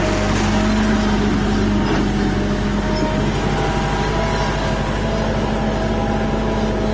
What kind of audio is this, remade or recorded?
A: recorded